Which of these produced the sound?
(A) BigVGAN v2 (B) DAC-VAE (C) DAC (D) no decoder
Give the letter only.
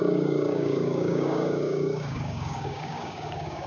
C